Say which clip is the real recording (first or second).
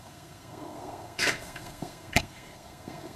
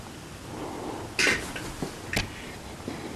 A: second